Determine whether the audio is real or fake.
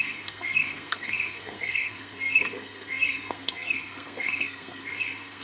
fake